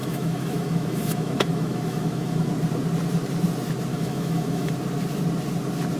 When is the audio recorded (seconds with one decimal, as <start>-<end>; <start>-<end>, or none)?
2.5-3.9; 4.7-6.0